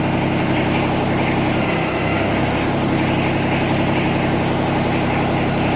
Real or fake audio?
real